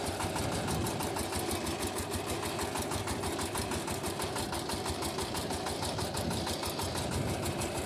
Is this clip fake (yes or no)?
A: no